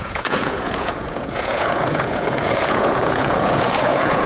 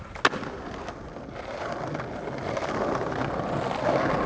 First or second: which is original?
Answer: second